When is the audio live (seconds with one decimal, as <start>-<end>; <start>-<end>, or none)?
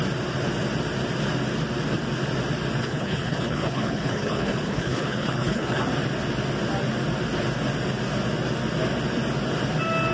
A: 0.0-2.8; 5.8-10.1